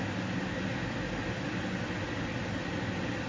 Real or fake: real